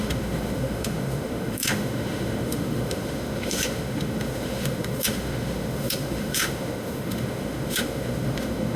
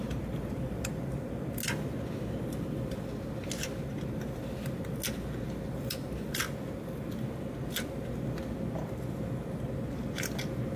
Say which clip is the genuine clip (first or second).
second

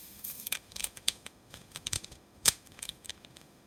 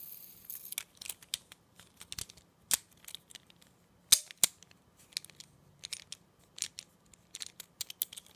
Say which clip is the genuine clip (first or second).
second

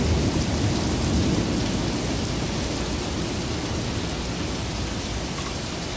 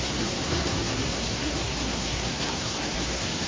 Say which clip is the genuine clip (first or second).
first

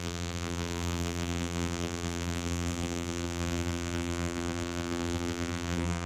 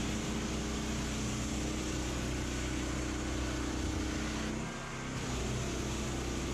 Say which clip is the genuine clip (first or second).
second